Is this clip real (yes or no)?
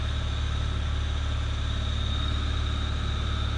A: yes